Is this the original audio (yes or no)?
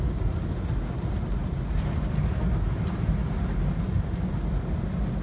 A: yes